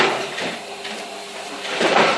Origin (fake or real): fake